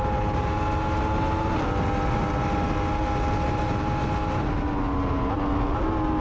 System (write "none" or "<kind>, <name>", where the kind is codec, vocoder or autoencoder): none